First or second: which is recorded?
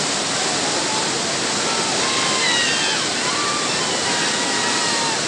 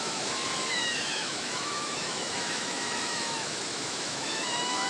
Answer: first